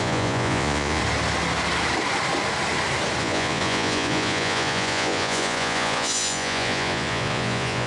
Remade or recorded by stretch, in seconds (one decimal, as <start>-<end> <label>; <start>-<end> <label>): 0.0-1.0 remade; 1.0-3.2 recorded; 3.2-7.9 remade